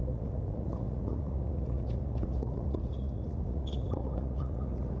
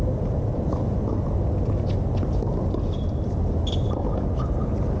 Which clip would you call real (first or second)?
second